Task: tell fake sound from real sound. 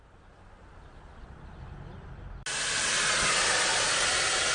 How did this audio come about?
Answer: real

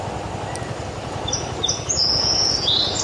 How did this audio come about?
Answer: real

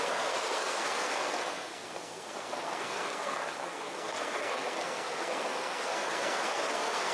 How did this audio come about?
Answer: fake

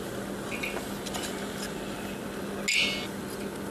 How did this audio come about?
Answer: real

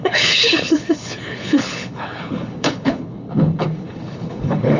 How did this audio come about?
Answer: fake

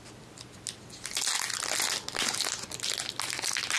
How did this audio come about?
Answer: real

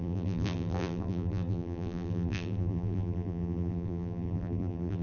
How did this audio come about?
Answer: fake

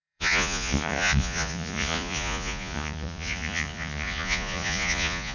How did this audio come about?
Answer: fake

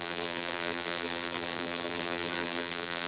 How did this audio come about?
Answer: fake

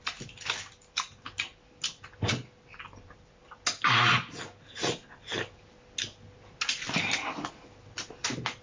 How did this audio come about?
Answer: real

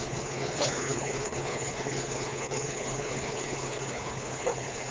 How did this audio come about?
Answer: fake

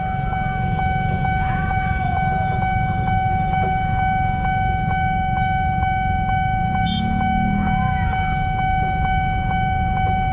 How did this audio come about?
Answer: fake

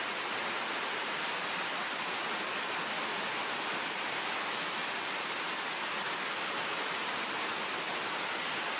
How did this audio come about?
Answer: real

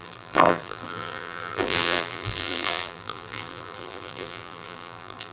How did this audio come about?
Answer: fake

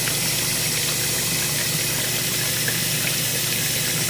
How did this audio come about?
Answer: real